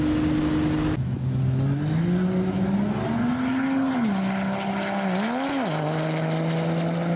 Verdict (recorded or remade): recorded